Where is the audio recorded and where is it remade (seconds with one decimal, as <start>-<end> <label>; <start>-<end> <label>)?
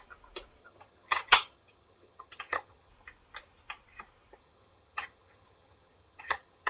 0.0-0.6 recorded; 0.6-2.9 remade; 2.9-4.4 recorded; 4.4-6.7 remade